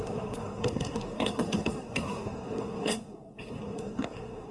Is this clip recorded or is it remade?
remade